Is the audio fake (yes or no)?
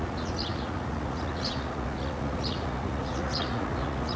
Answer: yes